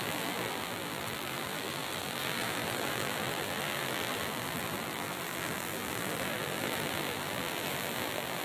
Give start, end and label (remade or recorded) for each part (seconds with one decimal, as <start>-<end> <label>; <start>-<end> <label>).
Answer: 0.0-8.4 remade